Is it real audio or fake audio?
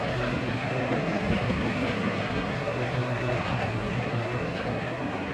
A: fake